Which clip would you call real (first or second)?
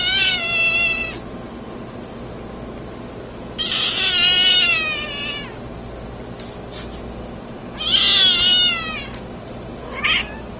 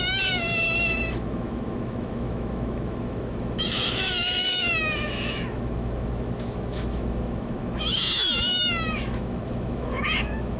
first